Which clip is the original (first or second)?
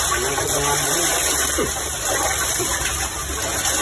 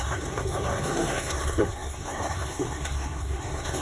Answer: first